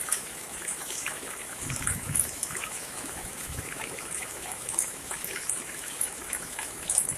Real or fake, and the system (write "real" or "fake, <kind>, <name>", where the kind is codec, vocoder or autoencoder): fake, autoencoder, DAC-VAE